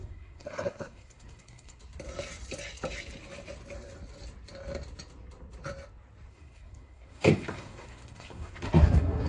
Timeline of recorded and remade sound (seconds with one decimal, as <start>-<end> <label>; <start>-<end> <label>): 0.0-1.8 remade; 1.8-6.3 recorded; 6.3-9.3 remade